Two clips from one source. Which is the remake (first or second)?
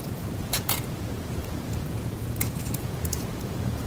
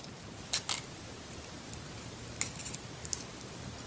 first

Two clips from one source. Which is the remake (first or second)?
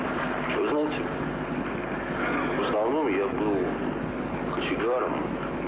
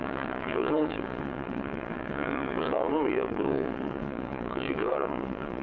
second